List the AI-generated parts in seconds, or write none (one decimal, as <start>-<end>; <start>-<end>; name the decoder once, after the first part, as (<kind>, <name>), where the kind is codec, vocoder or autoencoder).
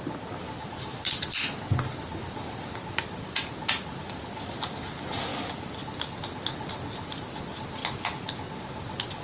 none